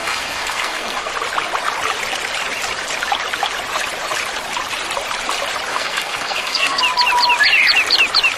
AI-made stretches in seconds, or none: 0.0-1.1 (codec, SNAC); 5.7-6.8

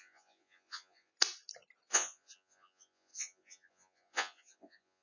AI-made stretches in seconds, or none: 0.0-1.1 (vocoder, Vocos); 1.9-5.0

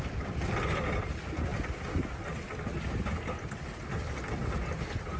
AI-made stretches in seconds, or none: none

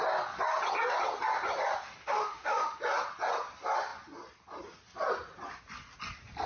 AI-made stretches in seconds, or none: 2.0-2.8 (autoencoder, DAC-VAE)

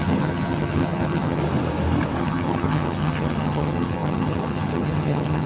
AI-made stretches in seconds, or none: 0.0-1.4 (vocoder, HiFi-GAN); 2.2-5.5